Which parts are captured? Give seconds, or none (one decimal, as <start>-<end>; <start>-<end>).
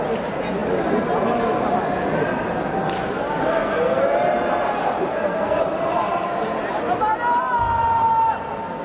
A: 0.0-3.4; 4.0-5.1; 5.6-8.8